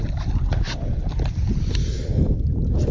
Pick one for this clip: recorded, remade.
recorded